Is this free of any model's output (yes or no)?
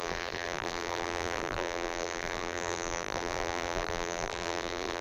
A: no